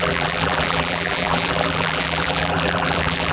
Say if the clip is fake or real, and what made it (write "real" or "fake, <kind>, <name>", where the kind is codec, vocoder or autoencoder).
fake, vocoder, BigVGAN v2